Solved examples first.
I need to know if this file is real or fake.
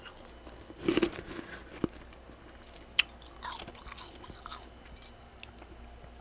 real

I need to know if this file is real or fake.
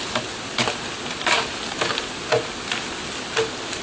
real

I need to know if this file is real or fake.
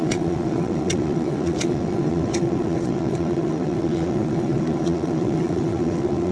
fake